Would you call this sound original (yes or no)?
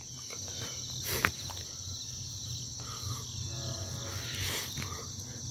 yes